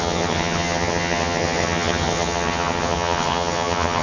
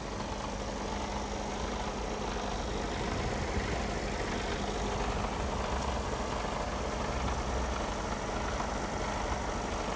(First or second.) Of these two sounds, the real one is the second